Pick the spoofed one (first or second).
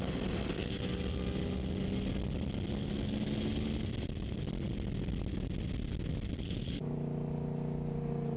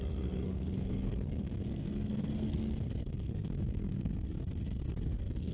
second